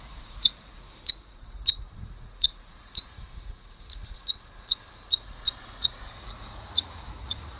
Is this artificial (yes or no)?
yes